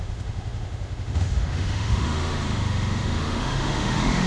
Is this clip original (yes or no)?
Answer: no